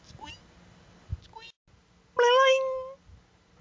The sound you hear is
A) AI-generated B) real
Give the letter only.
B